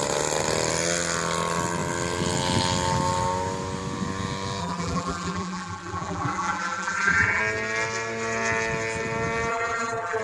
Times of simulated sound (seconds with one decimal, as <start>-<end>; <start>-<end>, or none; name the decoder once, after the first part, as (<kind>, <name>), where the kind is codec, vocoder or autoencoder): 4.6-7.4 (vocoder, BigVGAN v2); 9.5-10.2